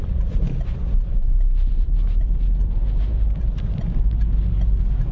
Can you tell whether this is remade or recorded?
remade